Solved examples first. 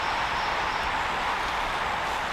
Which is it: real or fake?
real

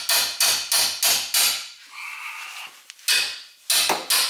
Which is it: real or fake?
real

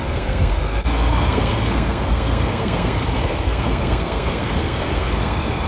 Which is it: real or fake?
fake